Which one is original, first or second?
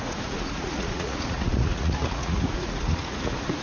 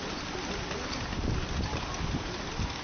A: second